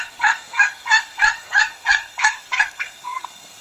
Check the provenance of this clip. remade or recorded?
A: remade